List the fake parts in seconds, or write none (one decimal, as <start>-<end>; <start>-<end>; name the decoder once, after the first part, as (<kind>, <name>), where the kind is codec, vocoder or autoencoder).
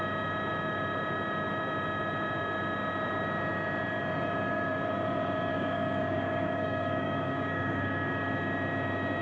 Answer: 5.5-8.1 (codec, DAC)